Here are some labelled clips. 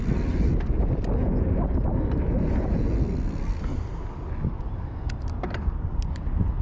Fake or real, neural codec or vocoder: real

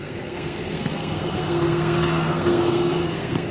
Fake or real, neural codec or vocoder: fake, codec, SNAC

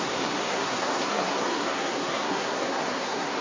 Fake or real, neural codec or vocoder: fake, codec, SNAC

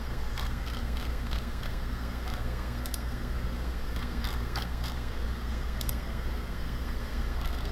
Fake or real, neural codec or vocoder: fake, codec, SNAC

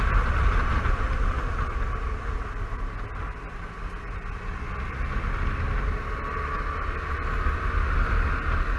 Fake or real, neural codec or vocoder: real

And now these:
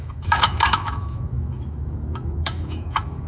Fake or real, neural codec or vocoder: fake, autoencoder, DAC-VAE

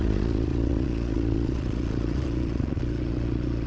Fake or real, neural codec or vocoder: fake, vocoder, Vocos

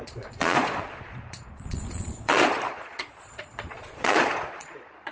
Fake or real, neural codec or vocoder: fake, vocoder, Vocos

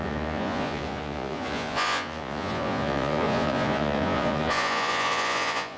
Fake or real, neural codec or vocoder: fake, vocoder, Vocos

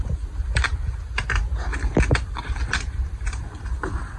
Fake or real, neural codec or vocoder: real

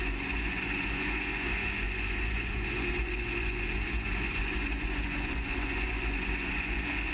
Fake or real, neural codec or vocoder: fake, vocoder, Vocos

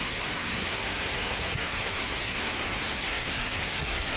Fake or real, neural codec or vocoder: fake, codec, SNAC